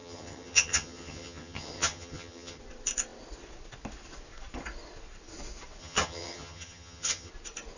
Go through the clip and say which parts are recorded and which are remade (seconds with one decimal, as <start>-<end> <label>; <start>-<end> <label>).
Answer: 0.0-2.6 remade; 2.6-5.8 recorded; 5.8-7.3 remade; 7.3-7.8 recorded